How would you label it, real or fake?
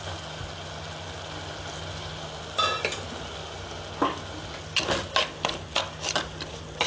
real